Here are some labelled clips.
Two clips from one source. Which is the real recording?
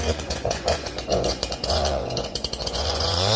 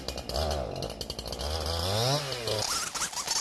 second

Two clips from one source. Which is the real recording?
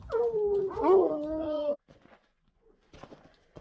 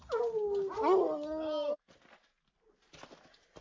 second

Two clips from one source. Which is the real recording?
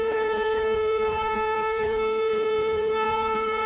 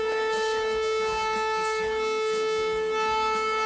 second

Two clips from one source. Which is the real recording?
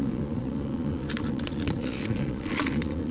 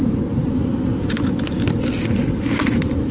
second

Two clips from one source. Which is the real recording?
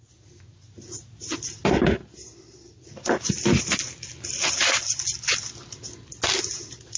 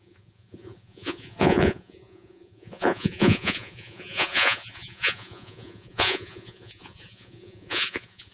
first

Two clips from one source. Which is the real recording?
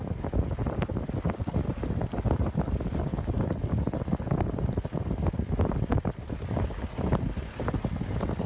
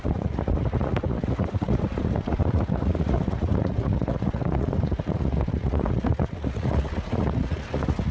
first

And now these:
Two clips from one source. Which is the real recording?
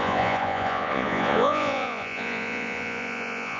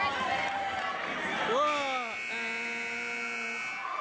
second